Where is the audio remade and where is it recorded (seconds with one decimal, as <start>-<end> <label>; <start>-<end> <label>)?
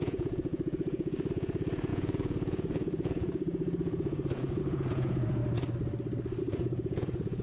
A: 0.0-5.4 remade; 5.4-6.4 recorded; 6.4-7.4 remade